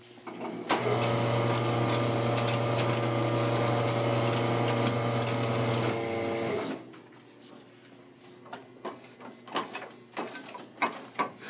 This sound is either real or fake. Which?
real